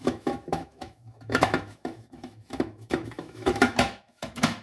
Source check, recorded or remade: remade